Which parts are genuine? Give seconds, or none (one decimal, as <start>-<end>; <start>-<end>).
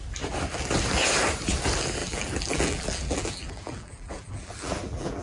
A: 0.0-2.0